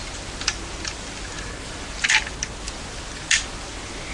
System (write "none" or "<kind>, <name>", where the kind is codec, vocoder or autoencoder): none